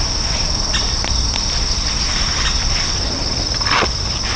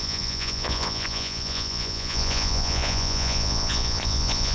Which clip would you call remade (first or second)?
second